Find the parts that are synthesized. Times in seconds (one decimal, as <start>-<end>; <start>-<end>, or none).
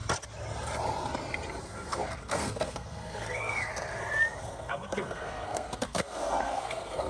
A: 1.6-3.7; 4.4-7.1